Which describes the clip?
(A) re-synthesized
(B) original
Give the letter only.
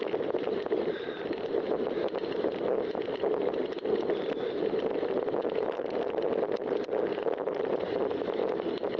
B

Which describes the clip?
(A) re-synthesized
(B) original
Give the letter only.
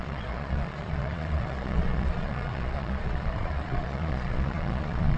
A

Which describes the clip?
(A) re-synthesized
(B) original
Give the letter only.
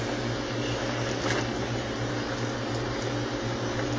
B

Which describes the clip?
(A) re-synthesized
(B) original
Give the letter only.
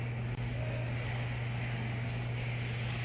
B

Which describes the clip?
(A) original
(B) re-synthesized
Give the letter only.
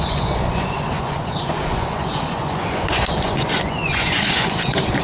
B